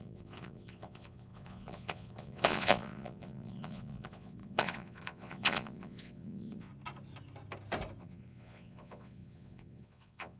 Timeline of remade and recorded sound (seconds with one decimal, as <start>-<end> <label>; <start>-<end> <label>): 0.0-6.7 remade; 6.7-8.0 recorded; 8.0-10.4 remade